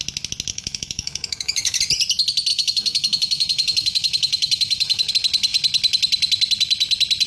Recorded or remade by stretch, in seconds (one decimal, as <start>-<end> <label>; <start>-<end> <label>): 0.0-0.5 recorded; 0.5-1.8 remade; 1.8-2.5 recorded; 2.5-5.1 remade; 5.1-7.3 recorded